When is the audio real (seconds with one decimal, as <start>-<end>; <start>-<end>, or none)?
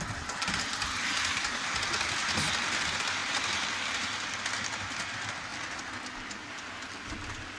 0.0-7.6